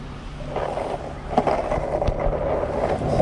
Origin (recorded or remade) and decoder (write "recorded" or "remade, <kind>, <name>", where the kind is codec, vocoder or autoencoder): recorded